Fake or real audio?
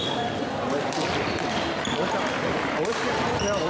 fake